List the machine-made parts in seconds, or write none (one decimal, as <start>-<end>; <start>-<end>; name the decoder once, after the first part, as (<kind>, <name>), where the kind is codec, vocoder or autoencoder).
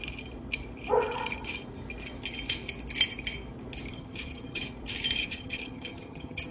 3.9-4.6 (vocoder, HiFi-GAN); 5.2-6.5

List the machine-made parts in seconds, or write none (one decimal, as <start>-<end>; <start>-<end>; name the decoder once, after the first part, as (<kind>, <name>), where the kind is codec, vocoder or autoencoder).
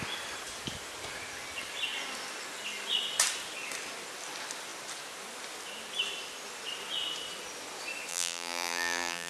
8.1-9.3 (vocoder, BigVGAN v2)